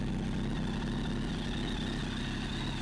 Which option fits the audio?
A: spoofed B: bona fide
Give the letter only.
B